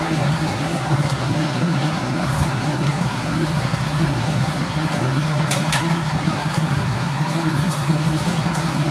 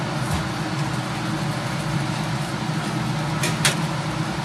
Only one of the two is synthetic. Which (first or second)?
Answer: first